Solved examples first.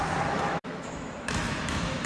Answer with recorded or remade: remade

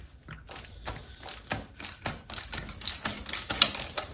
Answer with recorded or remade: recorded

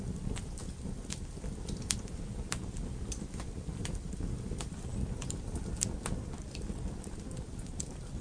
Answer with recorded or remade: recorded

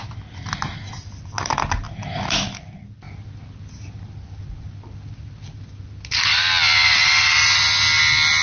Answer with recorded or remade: recorded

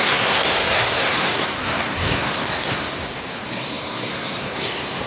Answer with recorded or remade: remade